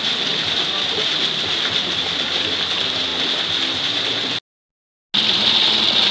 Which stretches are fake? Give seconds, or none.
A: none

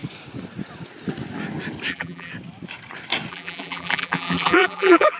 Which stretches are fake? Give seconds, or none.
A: 1.9-2.3 (vocoder, BigVGAN v2); 3.3-5.2

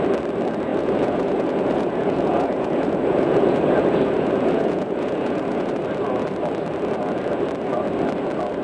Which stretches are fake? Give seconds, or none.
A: 0.7-5.7 (vocoder, Vocos)

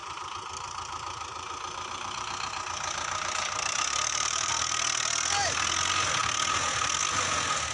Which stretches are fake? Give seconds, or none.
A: 0.0-4.5 (vocoder, BigVGAN v2)

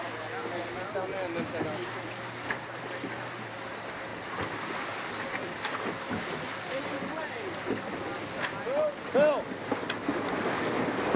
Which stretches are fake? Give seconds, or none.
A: none

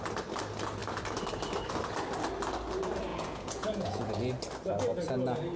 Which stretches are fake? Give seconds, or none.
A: 3.1-4.3 (vocoder, Vocos)

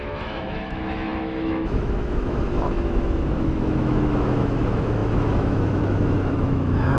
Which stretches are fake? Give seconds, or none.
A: 0.0-7.0 (autoencoder, DAC-VAE)